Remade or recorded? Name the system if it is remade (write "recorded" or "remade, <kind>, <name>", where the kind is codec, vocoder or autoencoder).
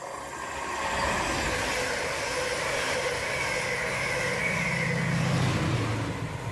recorded